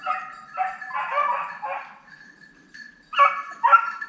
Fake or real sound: real